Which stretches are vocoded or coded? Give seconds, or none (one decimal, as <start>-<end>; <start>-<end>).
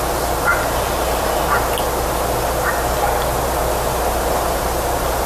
none